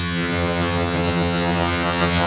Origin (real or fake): fake